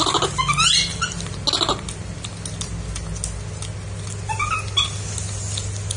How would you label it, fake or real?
real